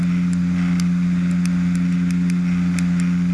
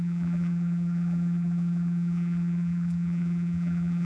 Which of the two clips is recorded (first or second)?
first